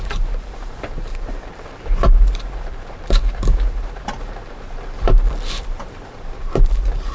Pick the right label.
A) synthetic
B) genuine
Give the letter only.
A